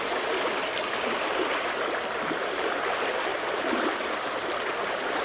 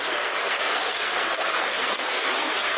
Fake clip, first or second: second